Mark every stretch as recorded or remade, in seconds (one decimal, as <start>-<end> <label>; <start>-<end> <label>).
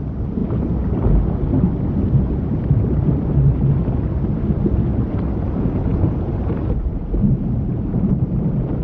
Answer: 0.0-5.9 recorded; 5.9-8.1 remade; 8.1-8.8 recorded